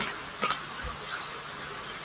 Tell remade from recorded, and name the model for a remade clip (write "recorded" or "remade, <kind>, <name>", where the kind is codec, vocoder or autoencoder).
recorded